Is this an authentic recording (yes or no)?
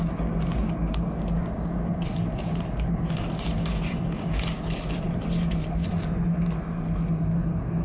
yes